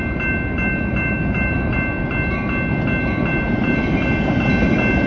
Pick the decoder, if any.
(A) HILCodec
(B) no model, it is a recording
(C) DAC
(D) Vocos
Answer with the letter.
B